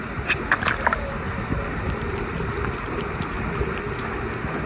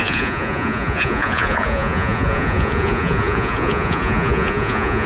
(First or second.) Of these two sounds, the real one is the first